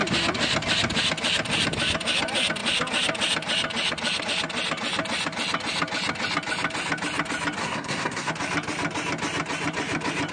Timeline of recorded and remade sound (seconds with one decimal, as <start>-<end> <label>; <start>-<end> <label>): 0.0-7.6 recorded; 7.6-8.3 remade; 8.3-10.3 recorded